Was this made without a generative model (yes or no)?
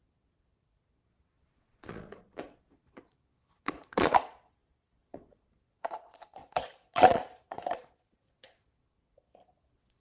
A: no